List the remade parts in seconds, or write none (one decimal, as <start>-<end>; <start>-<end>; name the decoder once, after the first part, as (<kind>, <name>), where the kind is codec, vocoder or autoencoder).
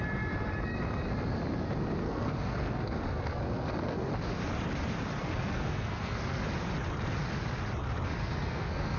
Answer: 2.0-4.1 (codec, SNAC); 5.2-6.4; 8.2-9.0